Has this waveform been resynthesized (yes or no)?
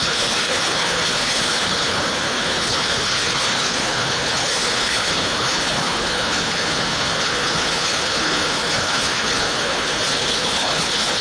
yes